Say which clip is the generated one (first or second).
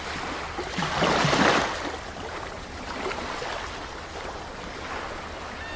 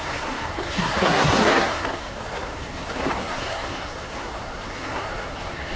second